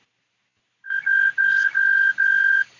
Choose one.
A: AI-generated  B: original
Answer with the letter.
B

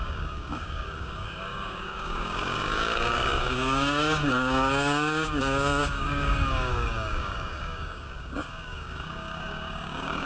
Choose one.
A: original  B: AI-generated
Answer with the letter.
B